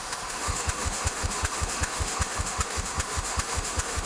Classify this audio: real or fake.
fake